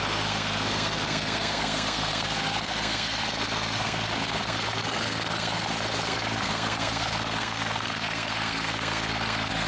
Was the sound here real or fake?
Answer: fake